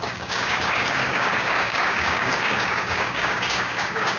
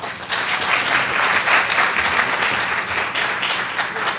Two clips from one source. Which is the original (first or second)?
second